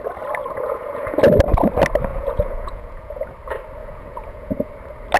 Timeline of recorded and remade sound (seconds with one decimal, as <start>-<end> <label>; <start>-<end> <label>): 0.0-0.4 recorded; 0.4-1.2 remade; 1.2-2.1 recorded; 2.1-3.3 remade; 3.3-3.8 recorded; 3.8-4.7 remade; 4.7-5.2 recorded